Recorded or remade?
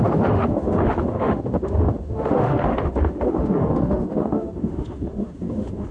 remade